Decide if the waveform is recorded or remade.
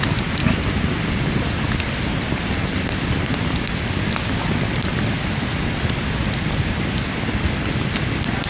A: recorded